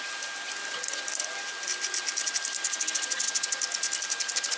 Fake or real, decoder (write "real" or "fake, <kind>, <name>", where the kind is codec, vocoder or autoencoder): real